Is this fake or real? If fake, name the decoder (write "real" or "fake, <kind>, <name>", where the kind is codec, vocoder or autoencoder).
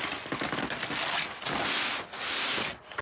real